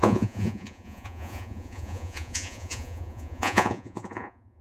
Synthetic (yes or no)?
yes